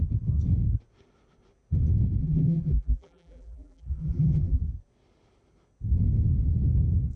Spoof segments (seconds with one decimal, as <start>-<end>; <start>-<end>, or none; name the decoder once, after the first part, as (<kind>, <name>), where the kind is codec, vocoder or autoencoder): 2.2-4.6 (vocoder, BigVGAN v2)